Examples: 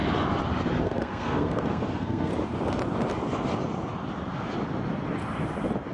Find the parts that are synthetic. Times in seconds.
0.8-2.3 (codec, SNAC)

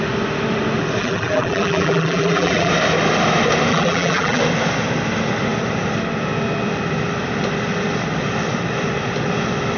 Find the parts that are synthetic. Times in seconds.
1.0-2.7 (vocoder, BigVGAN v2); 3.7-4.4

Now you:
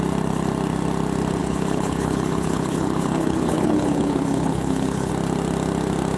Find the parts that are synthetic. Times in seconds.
1.4-5.1 (codec, HILCodec)